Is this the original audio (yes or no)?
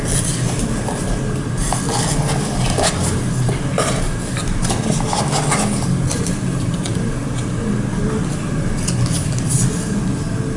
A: yes